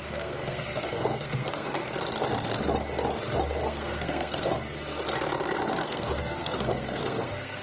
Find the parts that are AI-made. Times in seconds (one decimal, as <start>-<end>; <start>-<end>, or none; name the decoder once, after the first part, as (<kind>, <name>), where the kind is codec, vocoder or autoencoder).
0.0-1.8 (codec, SNAC); 3.6-4.5; 5.8-7.6